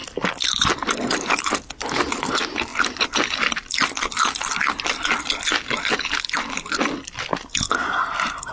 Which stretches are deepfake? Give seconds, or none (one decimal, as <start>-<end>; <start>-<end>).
none